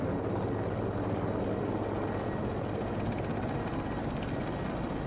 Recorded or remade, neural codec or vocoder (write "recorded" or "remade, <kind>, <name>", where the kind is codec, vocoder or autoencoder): recorded